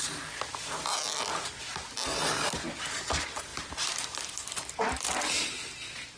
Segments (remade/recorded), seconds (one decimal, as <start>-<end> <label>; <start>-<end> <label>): 0.0-0.5 recorded; 0.5-1.3 remade; 1.3-3.5 recorded; 3.5-5.5 remade; 5.5-6.2 recorded